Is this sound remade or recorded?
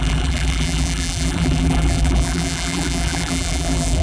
remade